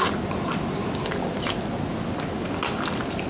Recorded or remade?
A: recorded